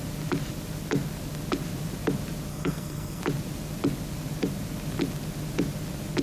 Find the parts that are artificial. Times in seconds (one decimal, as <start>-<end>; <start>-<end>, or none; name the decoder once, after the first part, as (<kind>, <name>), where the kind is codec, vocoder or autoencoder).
2.5-3.2 (codec, SNAC)